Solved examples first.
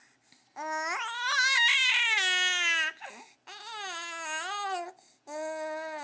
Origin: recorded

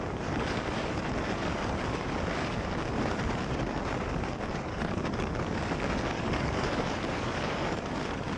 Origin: remade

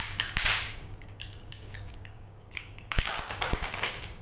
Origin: remade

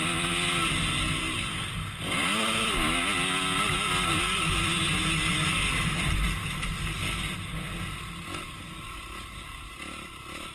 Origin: recorded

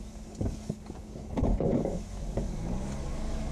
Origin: remade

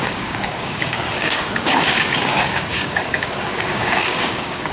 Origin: remade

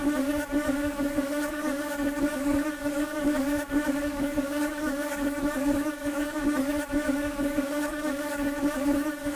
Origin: remade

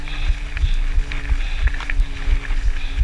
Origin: recorded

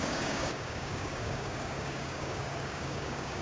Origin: remade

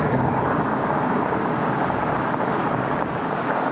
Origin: remade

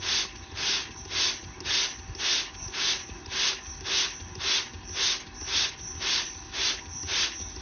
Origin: recorded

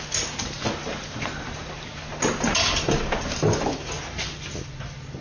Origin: recorded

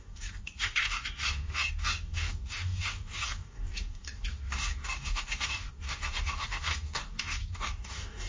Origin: remade